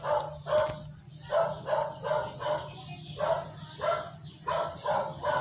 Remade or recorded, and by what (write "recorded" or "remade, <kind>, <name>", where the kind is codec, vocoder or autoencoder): recorded